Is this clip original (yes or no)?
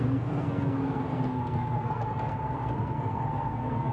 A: no